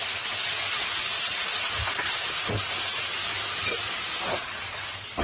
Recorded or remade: recorded